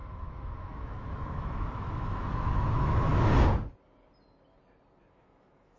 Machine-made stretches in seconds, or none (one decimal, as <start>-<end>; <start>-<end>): 0.0-3.1; 5.1-5.8